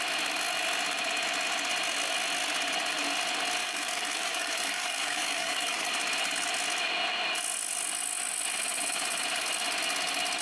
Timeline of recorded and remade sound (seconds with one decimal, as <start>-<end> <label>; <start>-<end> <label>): 0.0-3.6 recorded; 3.6-5.9 remade; 5.9-10.4 recorded